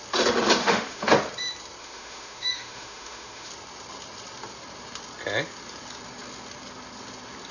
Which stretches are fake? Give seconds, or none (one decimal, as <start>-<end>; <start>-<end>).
0.6-1.1; 1.8-3.5